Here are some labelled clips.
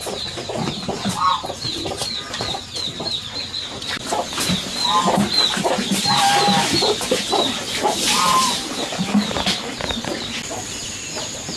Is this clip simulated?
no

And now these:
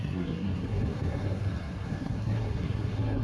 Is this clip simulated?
yes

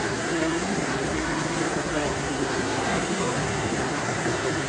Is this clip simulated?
yes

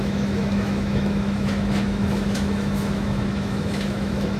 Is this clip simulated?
yes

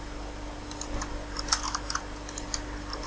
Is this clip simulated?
no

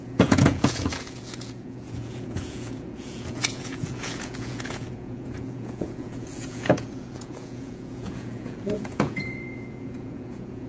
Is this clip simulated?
yes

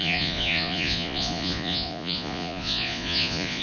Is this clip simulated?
yes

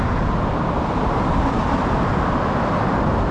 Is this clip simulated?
no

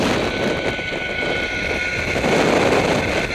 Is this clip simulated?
no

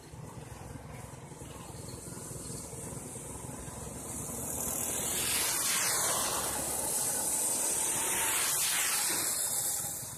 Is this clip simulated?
no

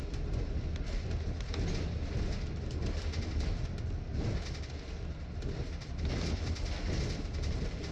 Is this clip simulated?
no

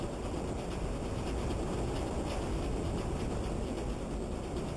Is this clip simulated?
no